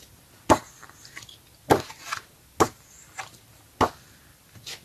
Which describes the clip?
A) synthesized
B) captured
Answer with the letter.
B